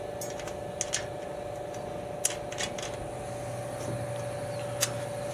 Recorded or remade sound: recorded